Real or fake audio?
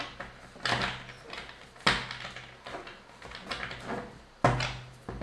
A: real